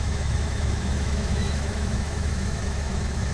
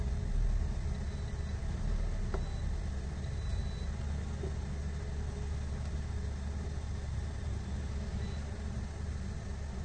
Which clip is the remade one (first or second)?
first